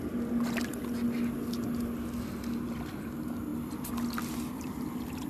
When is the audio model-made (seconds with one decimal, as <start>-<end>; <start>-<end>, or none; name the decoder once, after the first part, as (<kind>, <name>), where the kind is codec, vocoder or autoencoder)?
none

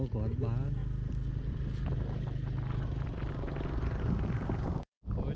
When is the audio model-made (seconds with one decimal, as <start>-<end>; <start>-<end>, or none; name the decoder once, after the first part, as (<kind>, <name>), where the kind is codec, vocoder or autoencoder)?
none

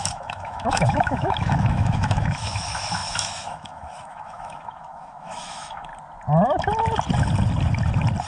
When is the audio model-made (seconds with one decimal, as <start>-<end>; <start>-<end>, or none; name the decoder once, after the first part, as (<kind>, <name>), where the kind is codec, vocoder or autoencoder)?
0.0-5.9 (autoencoder, DAC-VAE)